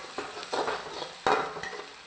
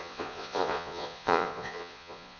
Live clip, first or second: first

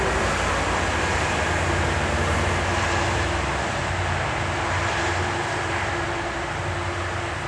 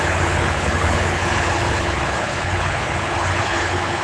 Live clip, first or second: first